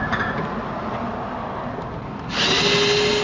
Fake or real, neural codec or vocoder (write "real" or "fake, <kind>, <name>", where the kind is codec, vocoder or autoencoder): real